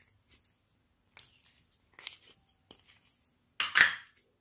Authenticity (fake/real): real